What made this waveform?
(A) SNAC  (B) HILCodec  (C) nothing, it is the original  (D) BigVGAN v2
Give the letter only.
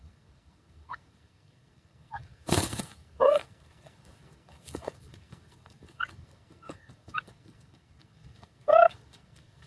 A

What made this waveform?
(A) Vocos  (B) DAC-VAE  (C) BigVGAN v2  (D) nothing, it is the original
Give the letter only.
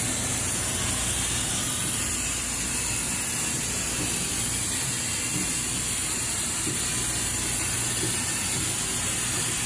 D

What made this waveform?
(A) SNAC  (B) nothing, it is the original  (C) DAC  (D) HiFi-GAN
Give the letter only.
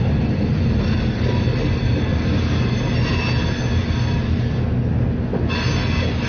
B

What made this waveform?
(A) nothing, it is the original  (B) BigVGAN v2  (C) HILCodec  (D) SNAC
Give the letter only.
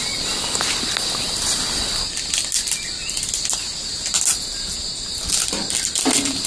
A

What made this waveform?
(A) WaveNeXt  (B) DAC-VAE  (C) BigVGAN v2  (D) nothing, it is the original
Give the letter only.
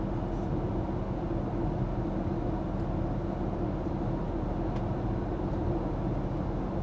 D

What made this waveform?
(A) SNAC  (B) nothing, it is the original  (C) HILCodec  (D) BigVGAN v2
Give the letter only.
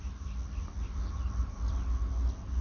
B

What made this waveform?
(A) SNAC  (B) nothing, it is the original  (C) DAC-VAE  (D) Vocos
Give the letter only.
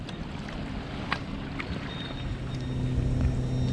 B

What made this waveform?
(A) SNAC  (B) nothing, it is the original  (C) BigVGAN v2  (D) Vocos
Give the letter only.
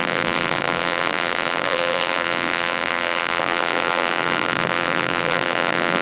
C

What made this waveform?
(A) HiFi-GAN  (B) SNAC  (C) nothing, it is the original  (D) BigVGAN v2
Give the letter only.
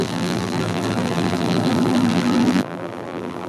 D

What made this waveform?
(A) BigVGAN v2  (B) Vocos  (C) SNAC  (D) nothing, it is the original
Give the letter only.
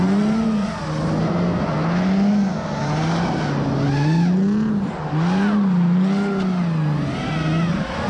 D